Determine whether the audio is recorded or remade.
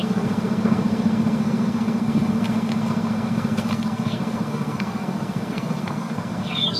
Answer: remade